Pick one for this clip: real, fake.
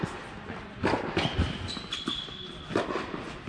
real